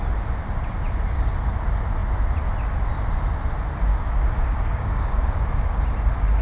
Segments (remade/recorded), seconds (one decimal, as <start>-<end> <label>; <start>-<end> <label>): 0.0-3.9 recorded; 3.9-5.8 remade; 5.8-6.4 recorded